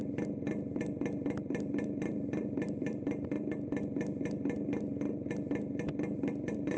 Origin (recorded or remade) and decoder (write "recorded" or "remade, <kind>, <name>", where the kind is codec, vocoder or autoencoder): recorded